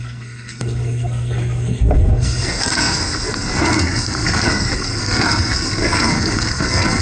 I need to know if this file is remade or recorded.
remade